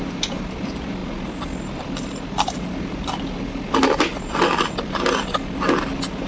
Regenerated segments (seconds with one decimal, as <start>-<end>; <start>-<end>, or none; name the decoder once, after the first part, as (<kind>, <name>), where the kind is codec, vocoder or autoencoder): none